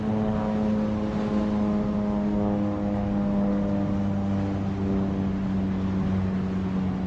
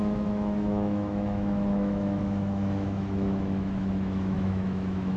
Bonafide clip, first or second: first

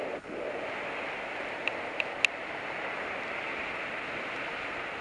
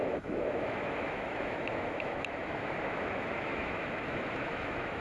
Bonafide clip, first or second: first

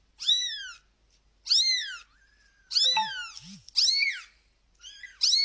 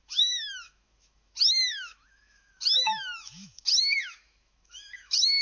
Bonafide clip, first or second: first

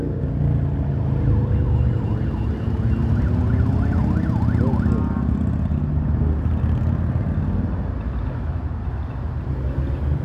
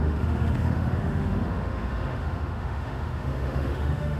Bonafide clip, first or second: first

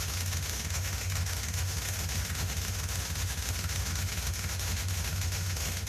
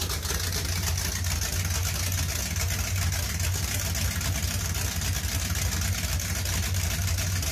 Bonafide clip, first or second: second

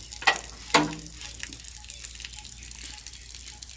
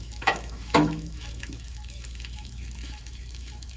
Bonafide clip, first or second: first